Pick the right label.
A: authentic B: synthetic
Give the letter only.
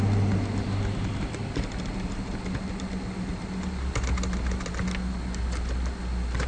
A